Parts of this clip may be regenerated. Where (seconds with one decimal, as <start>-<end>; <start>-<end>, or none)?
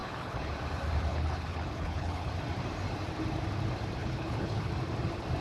0.0-0.5; 1.1-2.3; 4.0-4.7